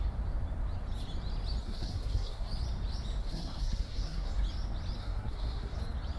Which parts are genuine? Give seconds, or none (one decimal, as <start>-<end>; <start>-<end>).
0.0-1.6; 2.5-3.2; 4.3-5.0; 5.8-6.2